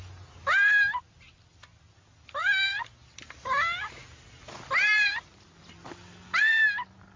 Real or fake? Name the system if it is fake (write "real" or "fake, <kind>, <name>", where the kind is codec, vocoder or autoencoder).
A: real